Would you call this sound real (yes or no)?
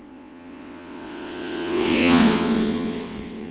no